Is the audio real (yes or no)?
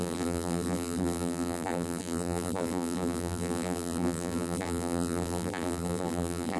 no